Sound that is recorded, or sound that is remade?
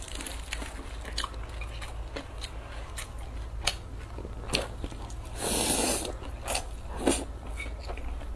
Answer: recorded